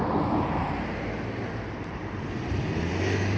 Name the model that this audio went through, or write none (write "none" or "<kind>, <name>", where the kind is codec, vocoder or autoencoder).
none